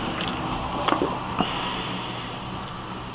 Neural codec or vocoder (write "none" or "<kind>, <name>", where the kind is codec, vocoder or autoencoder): none